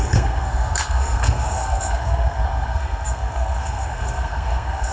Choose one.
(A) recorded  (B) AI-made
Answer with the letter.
B